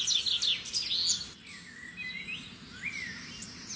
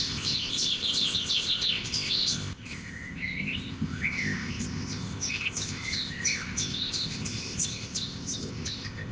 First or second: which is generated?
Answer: second